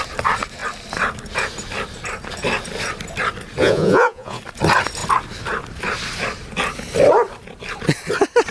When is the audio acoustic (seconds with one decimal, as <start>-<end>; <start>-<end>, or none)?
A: 0.0-3.6; 4.4-8.5